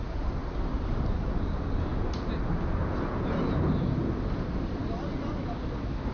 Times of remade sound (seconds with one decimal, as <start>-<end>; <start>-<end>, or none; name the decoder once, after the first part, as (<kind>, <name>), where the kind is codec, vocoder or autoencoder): none